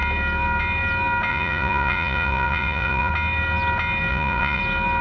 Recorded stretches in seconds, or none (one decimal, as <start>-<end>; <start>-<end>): 0.0-1.3; 3.1-4.1; 4.6-5.0